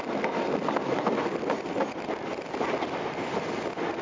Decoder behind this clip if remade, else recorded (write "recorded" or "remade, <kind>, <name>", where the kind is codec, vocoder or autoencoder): recorded